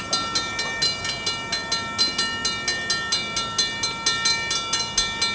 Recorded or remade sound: recorded